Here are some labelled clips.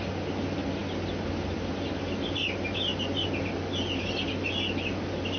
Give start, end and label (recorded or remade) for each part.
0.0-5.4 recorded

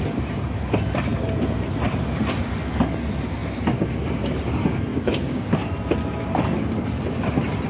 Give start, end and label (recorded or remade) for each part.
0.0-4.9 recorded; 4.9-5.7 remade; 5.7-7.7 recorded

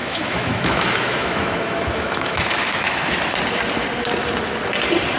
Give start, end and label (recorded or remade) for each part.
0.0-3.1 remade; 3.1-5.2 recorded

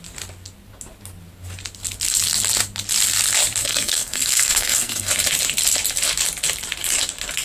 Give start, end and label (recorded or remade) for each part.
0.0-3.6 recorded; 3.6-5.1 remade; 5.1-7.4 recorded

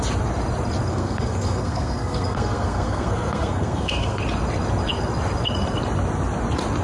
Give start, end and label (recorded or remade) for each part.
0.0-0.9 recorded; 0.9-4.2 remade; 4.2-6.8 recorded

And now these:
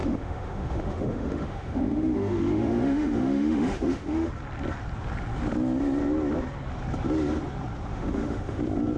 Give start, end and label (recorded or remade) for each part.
0.0-4.3 remade; 4.3-7.9 recorded; 7.9-8.6 remade; 8.6-9.0 recorded

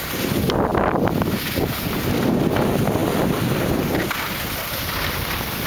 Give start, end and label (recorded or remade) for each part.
0.0-5.7 recorded

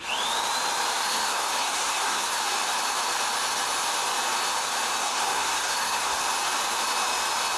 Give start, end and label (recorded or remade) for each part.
0.0-1.1 recorded; 1.1-2.4 remade; 2.4-5.0 recorded; 5.0-6.2 remade; 6.2-7.6 recorded